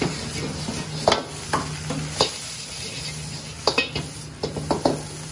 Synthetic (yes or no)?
no